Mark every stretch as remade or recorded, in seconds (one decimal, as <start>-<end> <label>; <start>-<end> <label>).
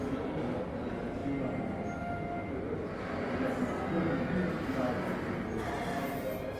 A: 0.0-6.6 recorded